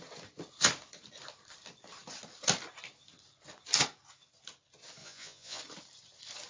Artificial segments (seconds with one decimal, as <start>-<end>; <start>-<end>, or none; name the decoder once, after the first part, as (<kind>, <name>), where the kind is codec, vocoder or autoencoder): 5.0-5.6 (vocoder, Vocos)